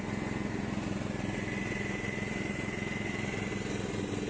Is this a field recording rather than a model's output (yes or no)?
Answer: yes